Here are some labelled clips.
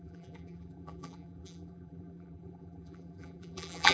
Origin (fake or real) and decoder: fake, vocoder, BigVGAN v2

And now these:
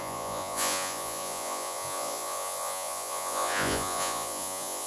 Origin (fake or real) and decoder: fake, vocoder, Vocos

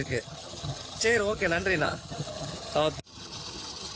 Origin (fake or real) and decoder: fake, vocoder, HiFi-GAN